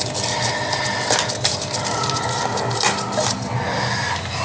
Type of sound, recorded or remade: recorded